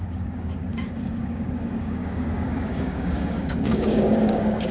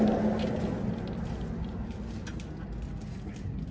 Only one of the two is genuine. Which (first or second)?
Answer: second